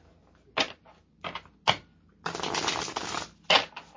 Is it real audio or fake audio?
real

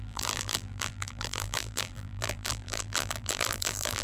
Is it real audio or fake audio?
fake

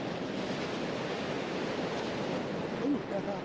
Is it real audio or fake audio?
real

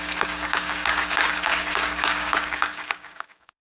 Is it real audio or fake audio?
fake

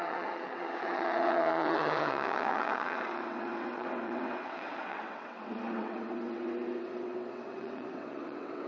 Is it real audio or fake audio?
fake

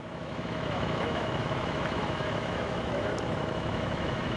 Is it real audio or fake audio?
fake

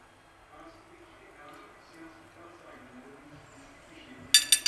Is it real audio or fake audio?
real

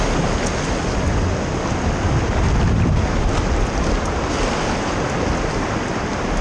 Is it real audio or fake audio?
real